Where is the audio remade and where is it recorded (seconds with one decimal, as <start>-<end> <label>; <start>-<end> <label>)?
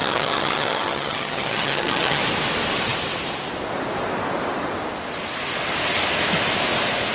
0.0-2.2 remade; 2.2-7.1 recorded